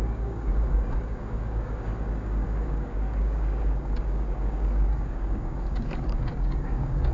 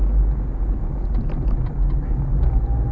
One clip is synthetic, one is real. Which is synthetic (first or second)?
first